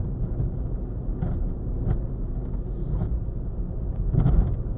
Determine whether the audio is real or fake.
real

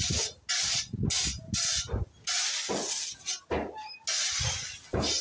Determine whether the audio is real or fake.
real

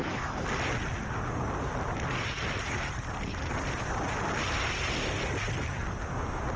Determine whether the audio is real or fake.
real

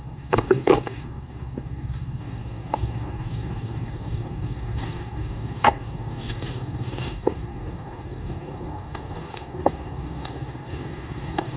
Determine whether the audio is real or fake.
fake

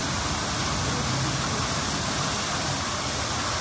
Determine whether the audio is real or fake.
real